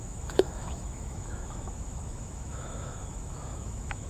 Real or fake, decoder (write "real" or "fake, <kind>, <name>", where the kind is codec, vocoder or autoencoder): fake, autoencoder, DAC-VAE